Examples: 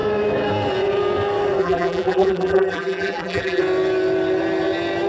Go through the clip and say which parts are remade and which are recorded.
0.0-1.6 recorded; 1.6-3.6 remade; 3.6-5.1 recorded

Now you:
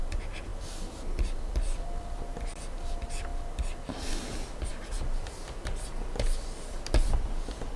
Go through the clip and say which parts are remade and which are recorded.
0.0-3.3 remade; 3.3-4.1 recorded; 4.1-4.7 remade; 4.7-6.7 recorded; 6.7-7.8 remade

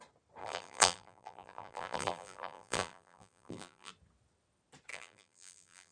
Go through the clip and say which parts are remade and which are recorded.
0.0-0.4 recorded; 0.4-3.9 remade; 3.9-4.9 recorded; 4.9-5.9 remade